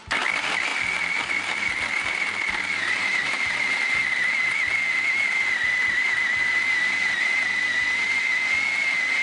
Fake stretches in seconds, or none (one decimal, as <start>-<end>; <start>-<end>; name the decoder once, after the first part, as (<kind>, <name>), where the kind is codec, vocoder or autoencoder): none